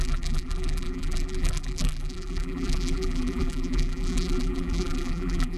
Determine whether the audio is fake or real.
fake